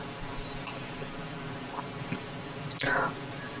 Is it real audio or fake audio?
real